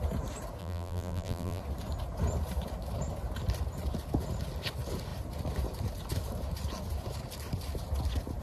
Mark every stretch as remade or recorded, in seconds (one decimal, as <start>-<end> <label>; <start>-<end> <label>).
0.0-0.6 recorded; 0.6-1.6 remade; 1.6-8.4 recorded